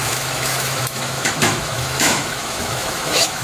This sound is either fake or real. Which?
fake